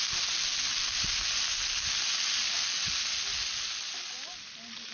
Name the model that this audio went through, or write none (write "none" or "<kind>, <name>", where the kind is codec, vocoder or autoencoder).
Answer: none